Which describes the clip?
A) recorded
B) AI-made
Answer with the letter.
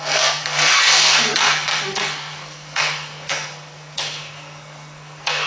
B